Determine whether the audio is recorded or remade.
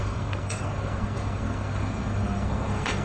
remade